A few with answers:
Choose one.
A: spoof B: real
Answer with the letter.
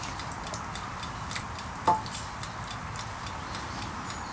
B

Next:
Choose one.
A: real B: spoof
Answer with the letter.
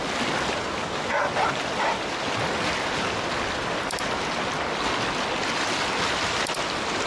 A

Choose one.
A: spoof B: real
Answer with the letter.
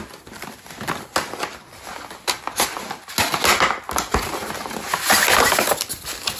B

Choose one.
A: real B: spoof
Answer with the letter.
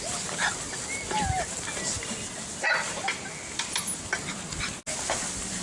A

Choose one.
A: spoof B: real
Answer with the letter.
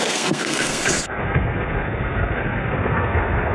A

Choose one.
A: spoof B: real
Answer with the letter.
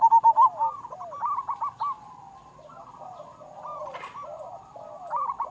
B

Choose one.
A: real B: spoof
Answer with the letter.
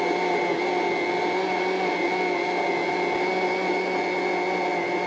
A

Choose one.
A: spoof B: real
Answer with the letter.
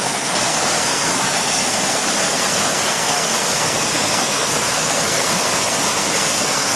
A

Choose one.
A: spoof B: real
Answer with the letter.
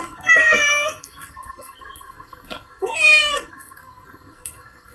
A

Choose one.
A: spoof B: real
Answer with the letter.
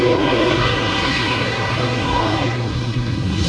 A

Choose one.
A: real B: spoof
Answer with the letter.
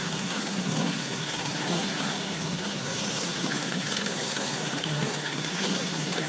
B